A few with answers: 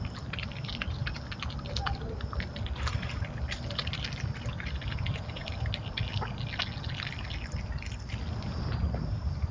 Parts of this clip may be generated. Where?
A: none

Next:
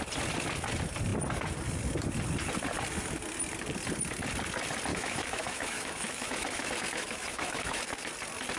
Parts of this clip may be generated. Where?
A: 4.9-7.8 (autoencoder, DAC-VAE)

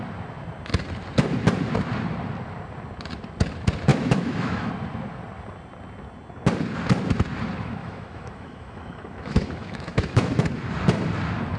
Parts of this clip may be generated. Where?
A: 3.9-4.7 (autoencoder, DAC-VAE); 7.8-10.4

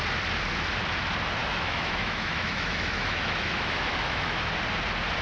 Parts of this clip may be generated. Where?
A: 1.4-4.5 (autoencoder, DAC-VAE)

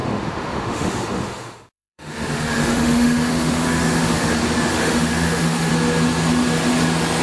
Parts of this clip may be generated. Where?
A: 0.0-4.3 (autoencoder, DAC-VAE); 4.7-5.7

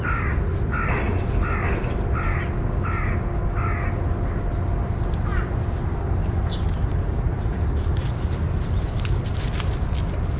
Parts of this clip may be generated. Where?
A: none